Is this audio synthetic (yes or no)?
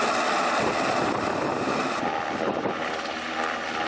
no